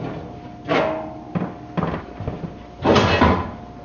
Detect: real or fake real